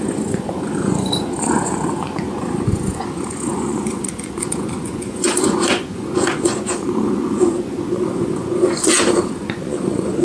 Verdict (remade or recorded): remade